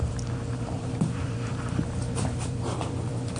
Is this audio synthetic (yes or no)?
yes